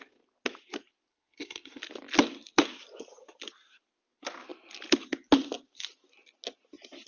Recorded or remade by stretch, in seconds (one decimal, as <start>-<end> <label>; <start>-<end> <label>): 0.0-1.1 recorded; 1.1-1.8 remade; 1.8-7.1 recorded